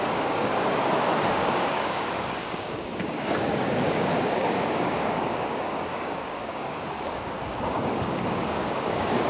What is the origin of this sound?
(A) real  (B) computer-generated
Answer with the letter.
B